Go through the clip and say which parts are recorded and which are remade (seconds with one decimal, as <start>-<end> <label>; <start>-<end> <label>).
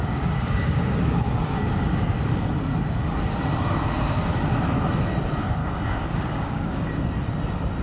0.0-1.5 remade; 1.5-5.6 recorded; 5.6-7.0 remade; 7.0-7.8 recorded